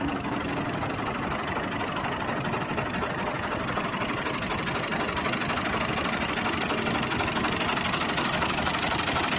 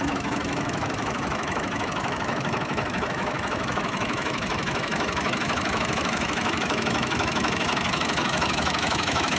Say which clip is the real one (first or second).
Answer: first